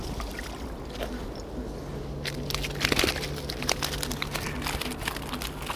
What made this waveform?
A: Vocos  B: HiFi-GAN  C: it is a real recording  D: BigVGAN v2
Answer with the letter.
C